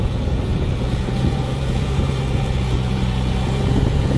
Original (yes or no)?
no